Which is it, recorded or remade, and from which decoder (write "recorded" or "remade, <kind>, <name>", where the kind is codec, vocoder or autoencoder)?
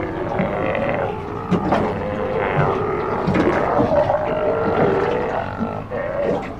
recorded